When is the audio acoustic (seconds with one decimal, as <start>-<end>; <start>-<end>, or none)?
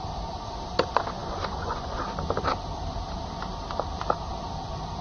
0.0-1.2; 2.0-5.0